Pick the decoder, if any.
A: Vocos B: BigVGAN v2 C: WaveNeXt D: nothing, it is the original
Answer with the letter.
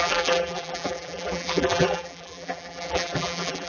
B